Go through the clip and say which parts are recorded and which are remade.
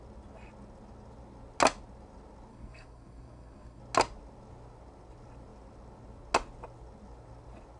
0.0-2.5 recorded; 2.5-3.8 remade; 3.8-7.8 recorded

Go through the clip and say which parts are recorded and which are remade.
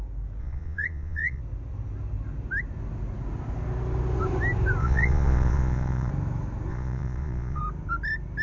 0.0-0.4 recorded; 0.4-1.4 remade; 1.4-4.8 recorded; 4.8-6.1 remade; 6.1-6.7 recorded; 6.7-7.6 remade; 7.6-8.4 recorded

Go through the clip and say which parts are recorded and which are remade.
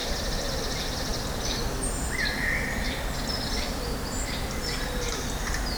0.0-5.8 recorded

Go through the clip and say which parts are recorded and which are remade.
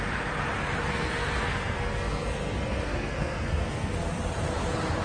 0.0-0.9 recorded; 0.9-3.9 remade; 3.9-5.0 recorded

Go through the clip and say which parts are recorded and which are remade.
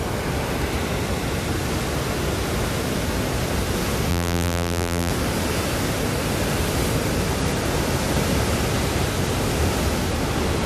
0.0-4.1 recorded; 4.1-5.1 remade; 5.1-10.7 recorded